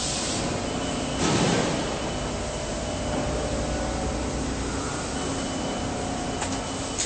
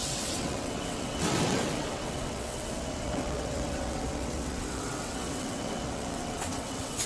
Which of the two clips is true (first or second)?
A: first